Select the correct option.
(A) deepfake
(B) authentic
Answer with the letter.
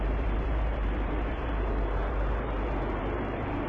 A